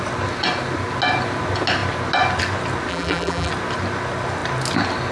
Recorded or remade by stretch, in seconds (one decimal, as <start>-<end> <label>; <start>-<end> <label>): 0.0-2.9 recorded; 2.9-3.5 remade; 3.5-5.1 recorded